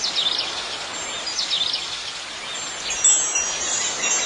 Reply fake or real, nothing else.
real